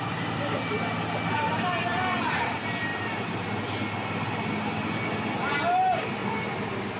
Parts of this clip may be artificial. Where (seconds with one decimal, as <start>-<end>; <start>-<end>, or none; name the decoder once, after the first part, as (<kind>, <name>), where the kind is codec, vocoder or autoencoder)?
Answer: none